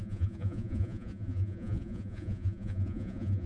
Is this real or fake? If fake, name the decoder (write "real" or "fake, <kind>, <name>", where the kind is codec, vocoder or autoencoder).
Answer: fake, vocoder, Vocos